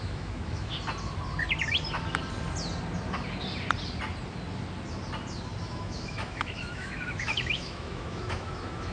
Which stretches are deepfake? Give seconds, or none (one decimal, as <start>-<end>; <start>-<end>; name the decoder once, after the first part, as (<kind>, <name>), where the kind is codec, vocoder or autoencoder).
0.0-0.7 (autoencoder, DAC-VAE); 5.6-8.9